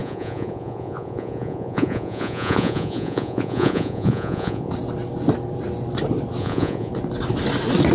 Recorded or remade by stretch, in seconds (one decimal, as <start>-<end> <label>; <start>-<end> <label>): 0.0-4.7 remade; 4.7-6.4 recorded; 6.4-6.9 remade; 6.9-7.9 recorded